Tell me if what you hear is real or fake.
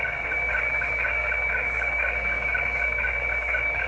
fake